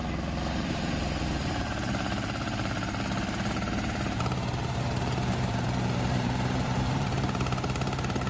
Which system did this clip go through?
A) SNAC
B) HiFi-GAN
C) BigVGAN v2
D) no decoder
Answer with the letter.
C